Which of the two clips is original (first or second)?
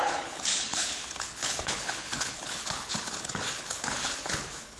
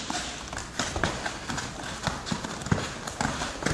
second